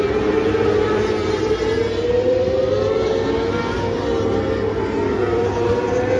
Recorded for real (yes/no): yes